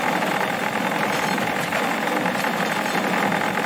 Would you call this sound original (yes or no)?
yes